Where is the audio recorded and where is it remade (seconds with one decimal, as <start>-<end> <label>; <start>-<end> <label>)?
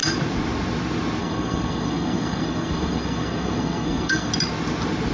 0.0-1.2 recorded; 1.2-4.3 remade; 4.3-5.1 recorded